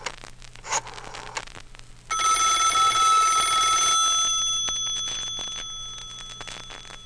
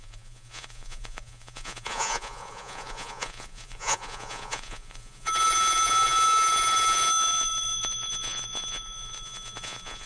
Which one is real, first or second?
first